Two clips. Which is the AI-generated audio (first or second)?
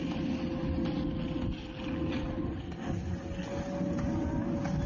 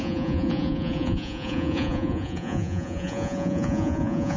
second